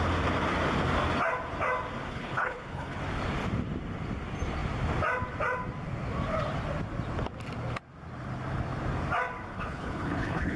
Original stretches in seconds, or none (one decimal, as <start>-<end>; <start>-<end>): 0.0-2.1; 3.0-9.5